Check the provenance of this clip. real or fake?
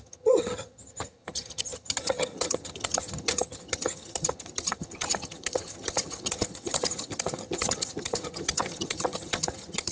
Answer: fake